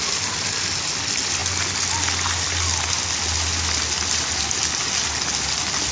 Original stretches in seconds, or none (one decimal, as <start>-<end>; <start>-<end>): 0.0-5.9